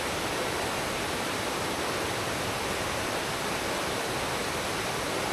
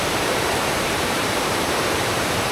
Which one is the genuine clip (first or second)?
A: first